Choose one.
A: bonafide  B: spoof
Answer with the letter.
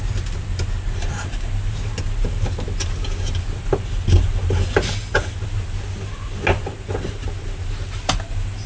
A